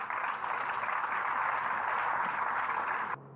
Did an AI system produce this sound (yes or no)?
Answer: no